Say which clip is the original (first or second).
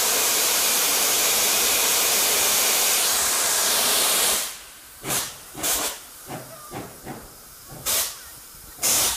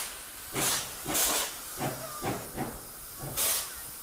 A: second